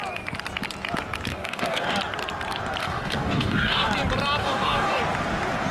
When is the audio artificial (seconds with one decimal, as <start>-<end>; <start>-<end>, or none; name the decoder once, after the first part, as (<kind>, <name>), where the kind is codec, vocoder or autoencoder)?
1.3-2.0 (codec, DAC); 2.8-3.9; 4.4-5.0